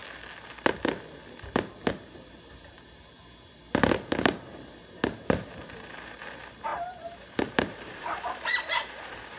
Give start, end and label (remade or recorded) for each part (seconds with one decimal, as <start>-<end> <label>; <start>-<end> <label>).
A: 0.0-1.9 recorded; 1.9-3.6 remade; 3.6-4.2 recorded; 4.2-9.4 remade